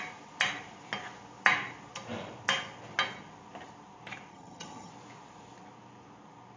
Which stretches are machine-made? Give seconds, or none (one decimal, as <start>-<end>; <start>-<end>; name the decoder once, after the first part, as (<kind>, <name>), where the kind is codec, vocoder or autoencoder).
4.3-4.9 (vocoder, HiFi-GAN)